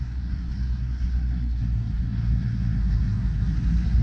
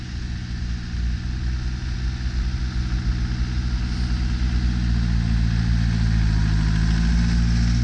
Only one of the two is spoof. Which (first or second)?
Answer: first